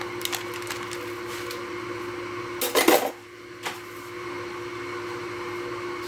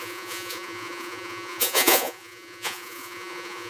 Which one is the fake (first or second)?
second